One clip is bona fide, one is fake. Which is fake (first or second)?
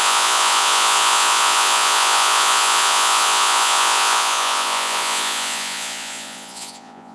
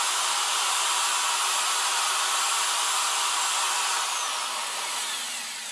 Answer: first